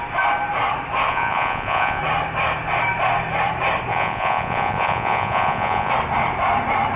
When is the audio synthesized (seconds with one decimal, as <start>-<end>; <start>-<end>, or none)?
1.1-2.0; 3.9-5.9